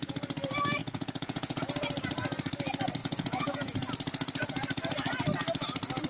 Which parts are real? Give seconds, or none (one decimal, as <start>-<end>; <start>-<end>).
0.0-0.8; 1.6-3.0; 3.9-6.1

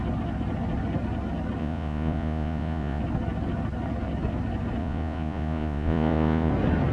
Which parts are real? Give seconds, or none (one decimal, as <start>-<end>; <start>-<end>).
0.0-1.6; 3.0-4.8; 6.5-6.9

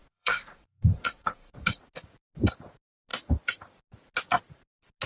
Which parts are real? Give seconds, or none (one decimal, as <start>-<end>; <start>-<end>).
1.8-5.1